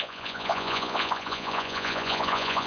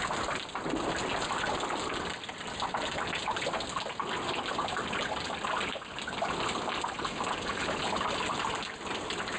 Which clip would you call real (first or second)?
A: second